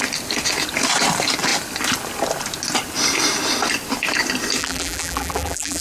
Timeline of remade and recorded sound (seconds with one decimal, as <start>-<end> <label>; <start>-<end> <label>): 0.0-4.6 recorded; 4.6-5.8 remade

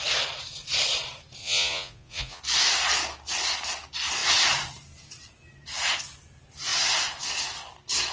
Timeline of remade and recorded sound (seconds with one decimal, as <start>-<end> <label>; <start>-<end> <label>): 0.0-1.4 recorded; 1.4-2.4 remade; 2.4-8.1 recorded

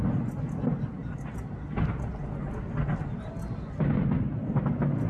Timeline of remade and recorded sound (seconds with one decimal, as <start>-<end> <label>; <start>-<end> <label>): 0.0-5.1 recorded

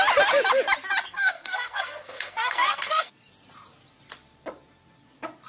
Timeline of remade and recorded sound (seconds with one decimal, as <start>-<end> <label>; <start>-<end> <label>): 0.0-1.0 recorded; 1.0-3.1 remade; 3.1-5.5 recorded

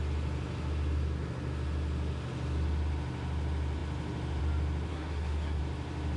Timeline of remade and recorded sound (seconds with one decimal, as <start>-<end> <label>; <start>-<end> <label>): 0.0-4.9 recorded; 4.9-5.6 remade; 5.6-6.2 recorded